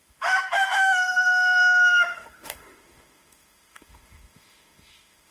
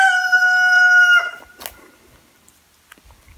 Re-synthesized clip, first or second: first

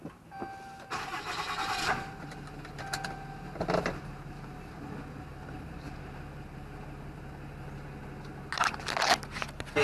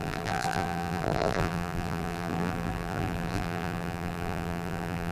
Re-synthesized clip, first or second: second